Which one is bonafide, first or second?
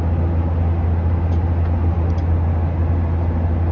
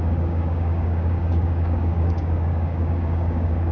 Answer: first